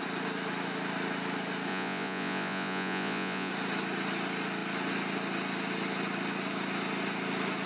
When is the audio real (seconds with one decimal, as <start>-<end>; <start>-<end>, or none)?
0.0-1.7; 3.5-7.7